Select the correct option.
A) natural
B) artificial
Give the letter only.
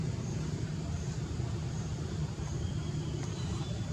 B